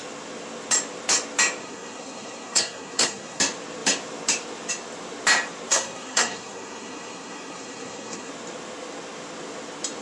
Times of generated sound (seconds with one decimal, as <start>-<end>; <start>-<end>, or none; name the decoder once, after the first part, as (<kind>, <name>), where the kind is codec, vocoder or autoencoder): 1.6-3.4 (codec, SNAC); 5.7-8.3